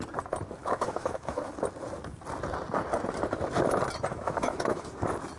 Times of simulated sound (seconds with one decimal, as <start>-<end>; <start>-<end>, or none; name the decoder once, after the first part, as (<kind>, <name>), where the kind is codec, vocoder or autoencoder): 0.6-1.5 (autoencoder, DAC-VAE); 4.1-4.9

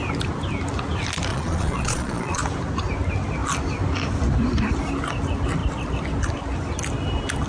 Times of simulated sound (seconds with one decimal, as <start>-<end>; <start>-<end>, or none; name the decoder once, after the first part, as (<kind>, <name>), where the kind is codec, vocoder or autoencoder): 1.3-2.4 (vocoder, Vocos)

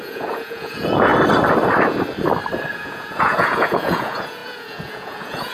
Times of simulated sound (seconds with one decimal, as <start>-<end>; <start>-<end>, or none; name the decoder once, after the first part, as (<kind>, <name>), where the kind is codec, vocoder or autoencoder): 0.0-1.1 (vocoder, Vocos); 2.7-5.5

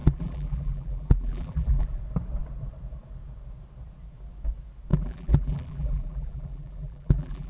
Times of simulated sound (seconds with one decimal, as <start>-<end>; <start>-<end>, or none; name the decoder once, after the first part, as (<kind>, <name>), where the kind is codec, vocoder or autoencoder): 0.0-2.0 (vocoder, BigVGAN v2); 4.9-7.5